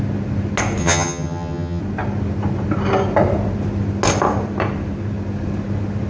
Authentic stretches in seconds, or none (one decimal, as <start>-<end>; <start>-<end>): 0.0-0.8; 1.8-6.1